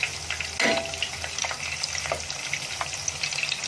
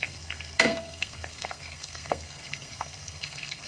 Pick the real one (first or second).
first